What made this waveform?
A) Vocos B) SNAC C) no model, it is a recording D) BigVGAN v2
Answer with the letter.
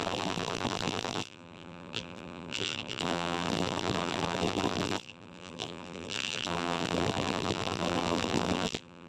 D